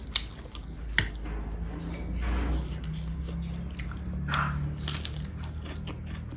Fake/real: real